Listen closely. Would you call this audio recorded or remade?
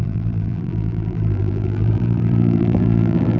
remade